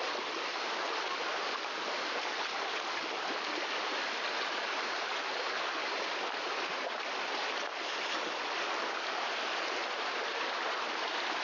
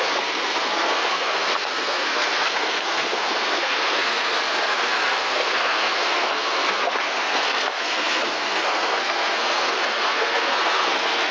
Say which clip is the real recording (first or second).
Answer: first